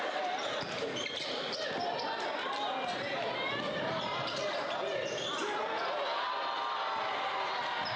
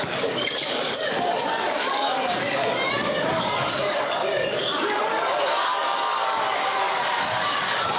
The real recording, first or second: first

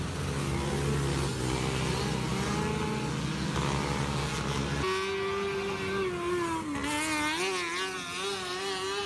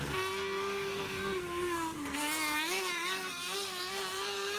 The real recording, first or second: first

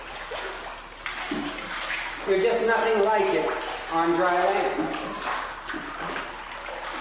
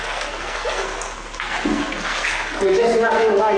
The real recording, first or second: first